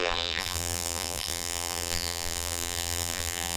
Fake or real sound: fake